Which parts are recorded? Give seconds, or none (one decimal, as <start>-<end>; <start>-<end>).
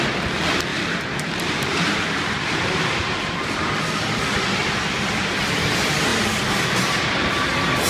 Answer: 0.0-0.7; 3.7-4.6; 5.4-6.1; 6.6-7.9